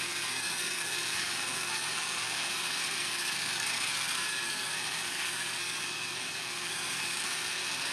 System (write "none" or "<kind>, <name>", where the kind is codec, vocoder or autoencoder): codec, SNAC